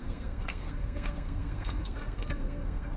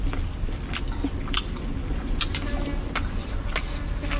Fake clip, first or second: first